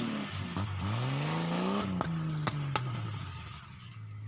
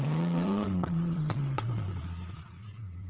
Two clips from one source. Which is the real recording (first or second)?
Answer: first